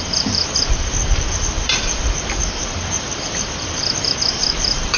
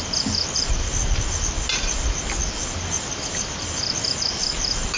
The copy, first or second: first